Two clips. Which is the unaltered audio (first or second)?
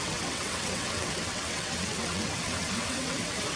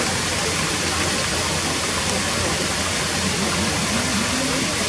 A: second